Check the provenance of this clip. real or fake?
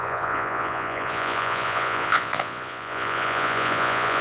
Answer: fake